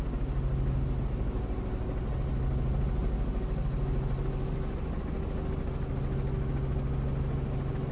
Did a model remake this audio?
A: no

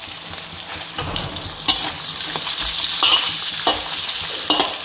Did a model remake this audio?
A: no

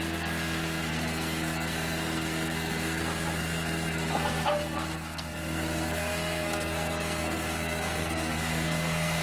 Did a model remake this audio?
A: yes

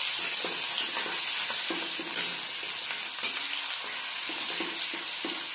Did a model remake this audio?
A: no